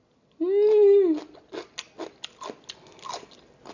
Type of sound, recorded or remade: recorded